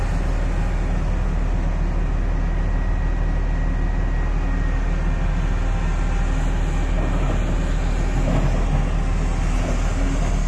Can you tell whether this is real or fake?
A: real